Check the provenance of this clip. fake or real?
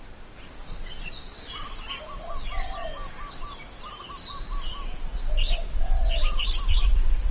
real